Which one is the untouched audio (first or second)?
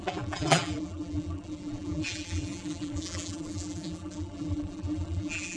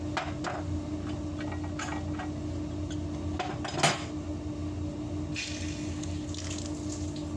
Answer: second